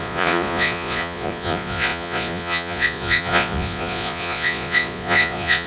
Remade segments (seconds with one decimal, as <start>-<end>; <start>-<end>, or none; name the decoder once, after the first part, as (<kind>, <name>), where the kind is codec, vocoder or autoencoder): 0.0-5.7 (vocoder, Vocos)